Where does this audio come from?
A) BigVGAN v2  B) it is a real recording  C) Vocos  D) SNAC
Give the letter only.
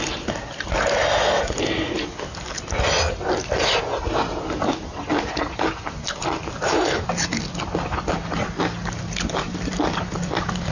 B